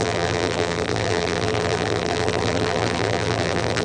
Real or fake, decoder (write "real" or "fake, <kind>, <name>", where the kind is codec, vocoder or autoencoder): fake, vocoder, BigVGAN v2